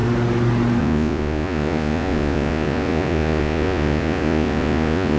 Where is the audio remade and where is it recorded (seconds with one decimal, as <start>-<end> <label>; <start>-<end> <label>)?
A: 0.0-0.8 recorded; 0.8-5.2 remade